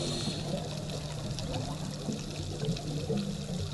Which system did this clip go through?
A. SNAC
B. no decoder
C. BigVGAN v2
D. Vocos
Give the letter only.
B